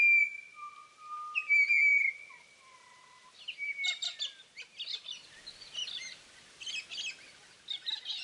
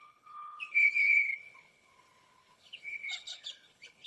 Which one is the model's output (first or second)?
second